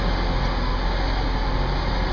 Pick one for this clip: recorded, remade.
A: recorded